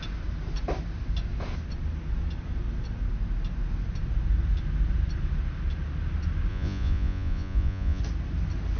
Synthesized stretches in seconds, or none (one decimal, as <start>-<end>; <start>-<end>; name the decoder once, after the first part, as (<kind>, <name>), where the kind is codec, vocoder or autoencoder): 6.5-8.0 (vocoder, Vocos)